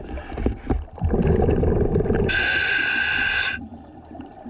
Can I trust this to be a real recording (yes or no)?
yes